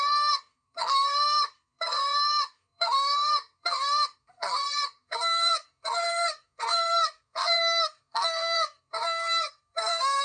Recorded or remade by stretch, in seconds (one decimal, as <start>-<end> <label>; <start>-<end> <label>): 0.0-10.2 remade